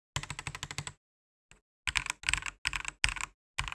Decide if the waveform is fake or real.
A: real